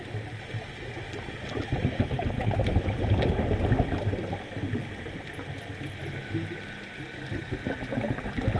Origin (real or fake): real